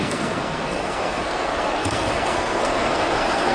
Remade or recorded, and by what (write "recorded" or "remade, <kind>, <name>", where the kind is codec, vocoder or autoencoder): remade, codec, SNAC